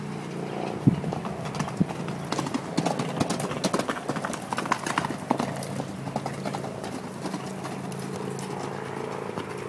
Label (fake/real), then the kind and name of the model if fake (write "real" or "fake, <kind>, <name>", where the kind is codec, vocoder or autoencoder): real